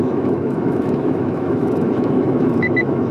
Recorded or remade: remade